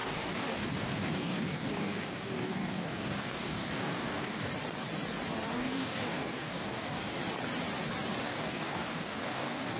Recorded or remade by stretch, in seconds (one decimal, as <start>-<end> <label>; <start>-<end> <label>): 0.0-4.5 remade; 4.5-5.5 recorded; 5.5-7.2 remade; 7.2-8.2 recorded; 8.2-9.8 remade